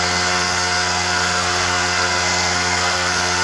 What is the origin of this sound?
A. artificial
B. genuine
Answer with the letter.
A